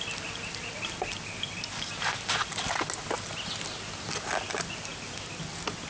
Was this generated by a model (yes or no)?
no